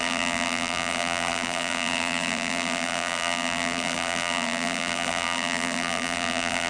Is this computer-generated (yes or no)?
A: yes